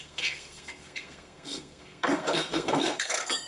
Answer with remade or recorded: remade